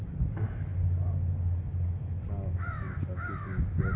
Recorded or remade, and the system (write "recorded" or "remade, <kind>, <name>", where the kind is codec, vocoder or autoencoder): recorded